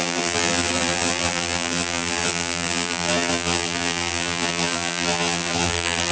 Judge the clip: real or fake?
fake